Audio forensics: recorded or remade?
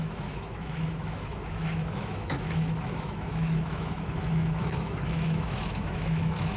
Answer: remade